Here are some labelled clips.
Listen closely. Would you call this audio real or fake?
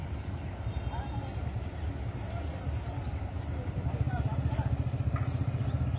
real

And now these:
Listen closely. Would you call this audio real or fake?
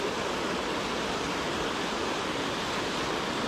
real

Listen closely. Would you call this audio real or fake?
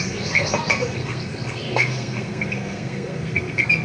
fake